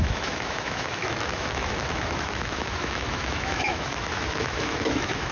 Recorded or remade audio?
remade